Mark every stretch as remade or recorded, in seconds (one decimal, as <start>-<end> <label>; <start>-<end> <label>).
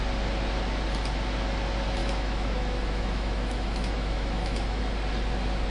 0.0-2.0 recorded; 2.0-4.8 remade; 4.8-5.7 recorded